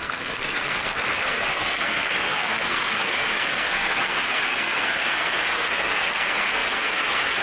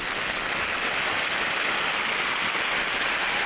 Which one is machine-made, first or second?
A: first